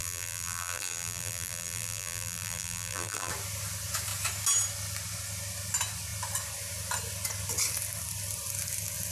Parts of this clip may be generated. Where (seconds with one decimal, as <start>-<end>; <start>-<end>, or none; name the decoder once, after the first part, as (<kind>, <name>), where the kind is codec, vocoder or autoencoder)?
0.0-3.3 (vocoder, BigVGAN v2)